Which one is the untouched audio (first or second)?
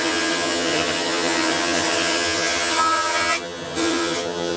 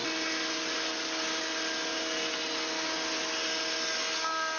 second